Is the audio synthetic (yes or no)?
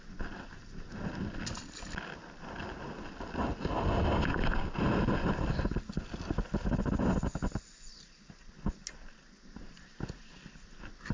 no